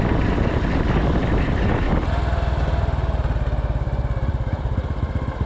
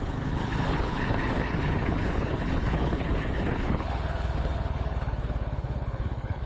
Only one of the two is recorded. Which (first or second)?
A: first